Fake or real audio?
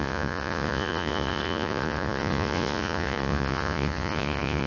fake